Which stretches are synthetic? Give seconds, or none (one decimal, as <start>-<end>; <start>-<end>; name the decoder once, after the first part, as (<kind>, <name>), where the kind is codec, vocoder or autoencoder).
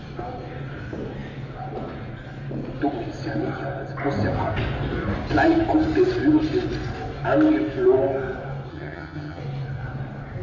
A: 8.7-9.4 (vocoder, HiFi-GAN)